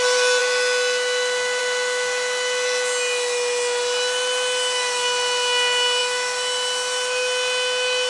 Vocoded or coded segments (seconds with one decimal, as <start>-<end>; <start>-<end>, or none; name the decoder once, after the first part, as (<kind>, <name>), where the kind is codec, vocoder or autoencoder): none